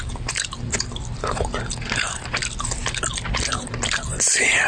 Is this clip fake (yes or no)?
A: no